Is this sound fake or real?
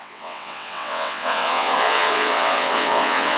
fake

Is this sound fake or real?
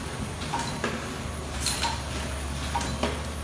real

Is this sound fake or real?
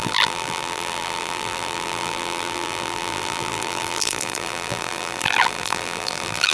fake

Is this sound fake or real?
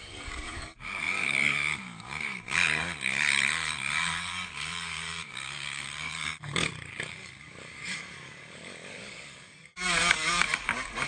fake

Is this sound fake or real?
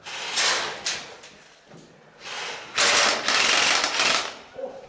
real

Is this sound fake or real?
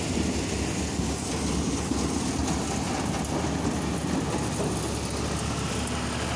real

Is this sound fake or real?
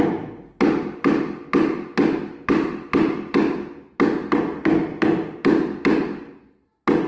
real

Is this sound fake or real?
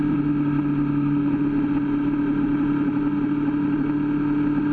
real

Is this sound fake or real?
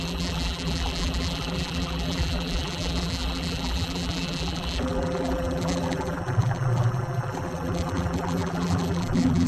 fake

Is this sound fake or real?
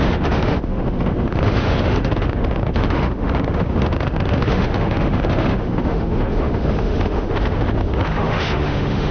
fake